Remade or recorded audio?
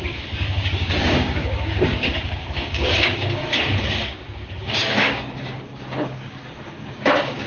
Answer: remade